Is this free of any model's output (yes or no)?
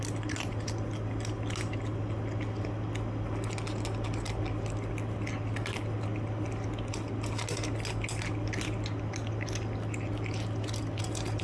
yes